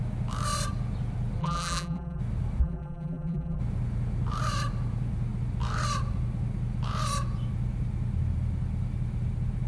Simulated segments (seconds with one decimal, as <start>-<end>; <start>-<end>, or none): 1.4-2.2; 2.6-3.6